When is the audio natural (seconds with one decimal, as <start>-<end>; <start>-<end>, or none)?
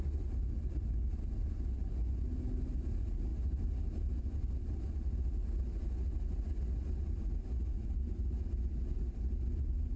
0.0-10.0